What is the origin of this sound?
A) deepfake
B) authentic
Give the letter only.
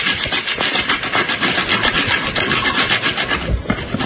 B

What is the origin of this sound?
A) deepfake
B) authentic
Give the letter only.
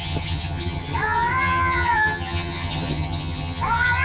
A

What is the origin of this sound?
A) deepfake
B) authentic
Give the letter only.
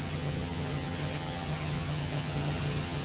A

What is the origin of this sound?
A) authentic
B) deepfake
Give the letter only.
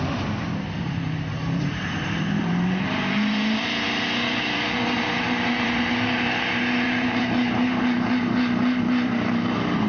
B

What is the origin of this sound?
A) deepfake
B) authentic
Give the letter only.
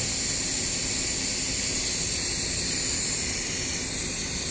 B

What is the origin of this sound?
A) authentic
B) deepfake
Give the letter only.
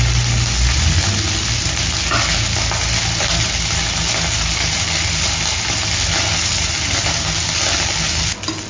A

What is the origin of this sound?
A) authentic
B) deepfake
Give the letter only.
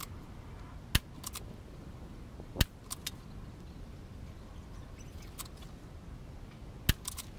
A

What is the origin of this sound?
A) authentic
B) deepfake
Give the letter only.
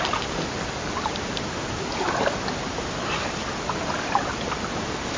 A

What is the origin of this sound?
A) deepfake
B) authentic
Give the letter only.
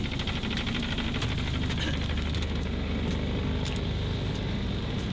B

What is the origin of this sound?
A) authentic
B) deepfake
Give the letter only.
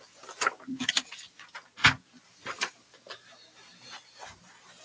A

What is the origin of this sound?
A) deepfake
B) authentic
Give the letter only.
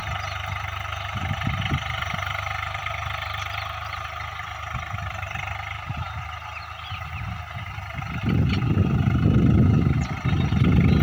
B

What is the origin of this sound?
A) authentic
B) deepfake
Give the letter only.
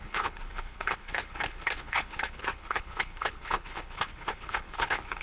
B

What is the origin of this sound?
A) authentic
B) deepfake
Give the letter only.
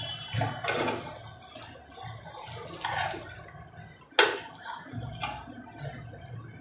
A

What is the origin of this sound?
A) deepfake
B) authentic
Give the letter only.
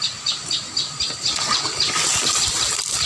B